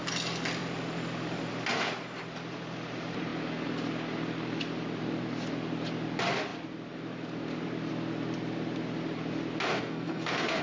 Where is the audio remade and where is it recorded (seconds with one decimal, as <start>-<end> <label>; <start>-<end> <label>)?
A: 0.0-9.7 recorded; 9.7-10.6 remade